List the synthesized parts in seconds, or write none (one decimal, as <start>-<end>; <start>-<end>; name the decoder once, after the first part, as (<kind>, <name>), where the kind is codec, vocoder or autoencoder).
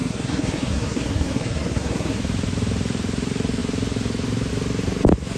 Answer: 0.0-2.2 (codec, SNAC)